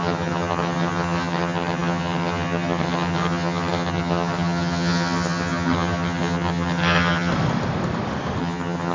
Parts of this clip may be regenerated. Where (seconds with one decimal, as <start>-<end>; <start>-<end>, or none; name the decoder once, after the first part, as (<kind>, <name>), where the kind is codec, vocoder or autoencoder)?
0.0-7.3 (vocoder, HiFi-GAN); 8.4-8.9